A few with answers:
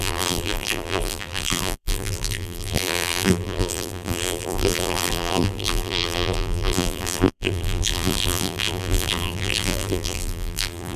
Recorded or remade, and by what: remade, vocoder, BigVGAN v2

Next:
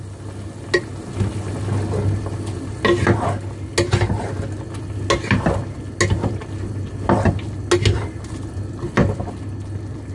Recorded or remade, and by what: recorded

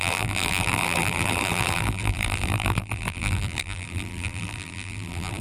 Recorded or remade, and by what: remade, vocoder, BigVGAN v2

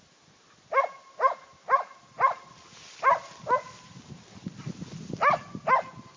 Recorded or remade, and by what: recorded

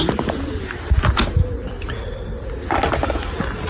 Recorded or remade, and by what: recorded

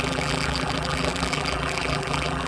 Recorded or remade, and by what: remade, vocoder, BigVGAN v2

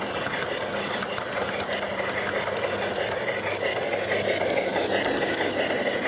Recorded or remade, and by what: recorded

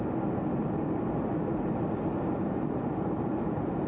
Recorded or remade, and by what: recorded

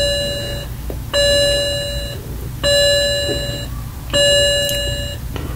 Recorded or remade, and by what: recorded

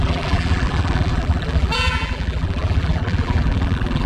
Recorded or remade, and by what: remade, vocoder, BigVGAN v2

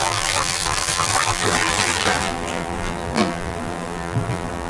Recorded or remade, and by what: remade, vocoder, BigVGAN v2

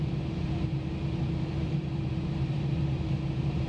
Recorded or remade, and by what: remade, vocoder, BigVGAN v2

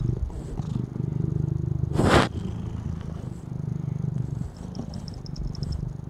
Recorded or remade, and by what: recorded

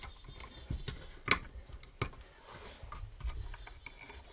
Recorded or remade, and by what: recorded